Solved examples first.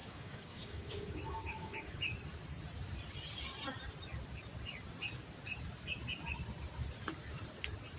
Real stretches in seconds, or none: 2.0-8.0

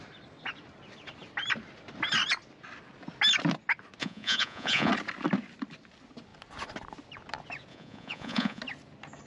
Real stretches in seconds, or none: 0.0-4.0; 4.9-7.7; 8.6-9.3

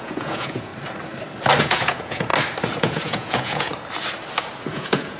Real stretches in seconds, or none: 0.7-1.6; 2.3-2.8; 3.7-4.7

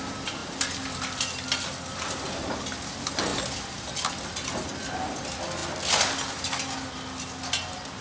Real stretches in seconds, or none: 0.0-8.0

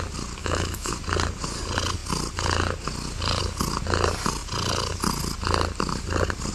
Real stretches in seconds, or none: 0.0-0.4; 0.9-6.5

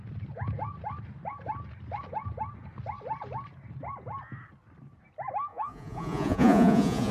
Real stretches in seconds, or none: 0.0-5.5

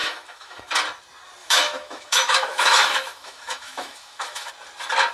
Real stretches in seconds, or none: 0.7-1.4; 4.5-5.1

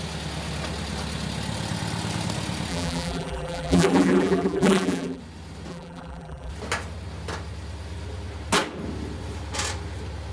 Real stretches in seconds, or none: 0.0-2.7; 5.2-5.7; 6.5-10.3